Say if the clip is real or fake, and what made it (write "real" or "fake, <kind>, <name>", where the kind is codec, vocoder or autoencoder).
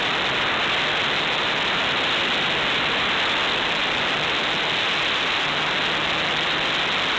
real